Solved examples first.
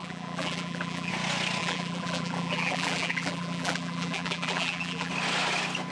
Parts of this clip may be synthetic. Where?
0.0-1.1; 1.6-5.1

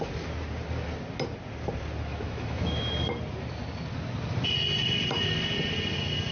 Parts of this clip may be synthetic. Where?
2.1-3.1

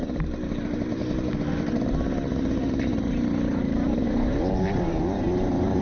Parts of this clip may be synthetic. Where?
2.3-5.8

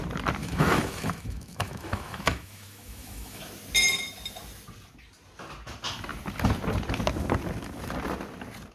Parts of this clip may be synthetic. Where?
0.4-3.4

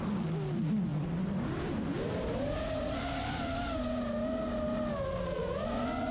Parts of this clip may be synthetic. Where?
none